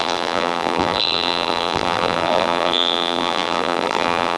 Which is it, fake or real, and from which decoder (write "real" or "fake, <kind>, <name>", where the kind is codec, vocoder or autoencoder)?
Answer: fake, vocoder, BigVGAN v2